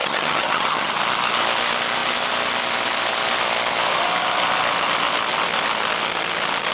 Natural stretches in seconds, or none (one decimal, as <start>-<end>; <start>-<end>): 0.9-6.7